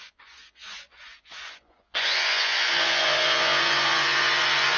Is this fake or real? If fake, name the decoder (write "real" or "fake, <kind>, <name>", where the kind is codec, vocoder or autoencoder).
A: fake, vocoder, Vocos